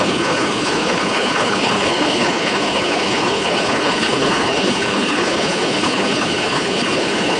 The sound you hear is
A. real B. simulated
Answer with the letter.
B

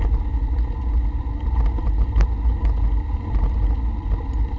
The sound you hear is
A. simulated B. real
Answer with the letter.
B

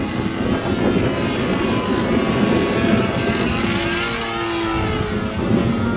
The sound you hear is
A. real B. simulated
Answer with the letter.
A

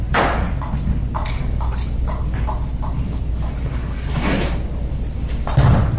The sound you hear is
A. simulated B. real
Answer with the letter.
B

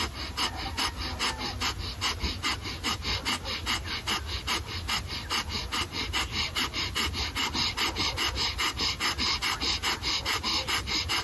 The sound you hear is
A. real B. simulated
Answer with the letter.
A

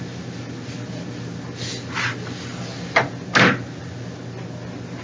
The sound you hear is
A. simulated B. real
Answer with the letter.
B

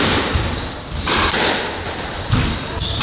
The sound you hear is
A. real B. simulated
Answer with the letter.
A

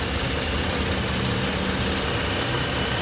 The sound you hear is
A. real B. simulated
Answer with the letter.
A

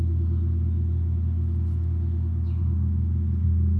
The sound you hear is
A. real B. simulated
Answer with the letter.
A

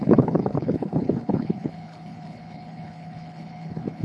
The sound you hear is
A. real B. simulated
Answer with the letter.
B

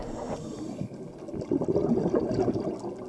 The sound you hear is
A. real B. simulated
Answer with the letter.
A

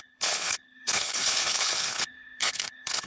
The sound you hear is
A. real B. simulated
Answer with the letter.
B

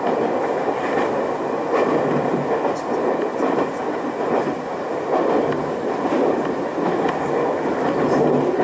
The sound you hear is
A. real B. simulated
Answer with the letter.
A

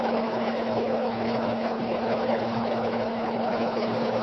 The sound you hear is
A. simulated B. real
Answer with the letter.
A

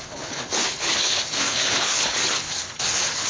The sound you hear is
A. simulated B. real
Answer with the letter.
A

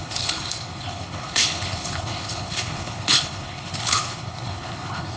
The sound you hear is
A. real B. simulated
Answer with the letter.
B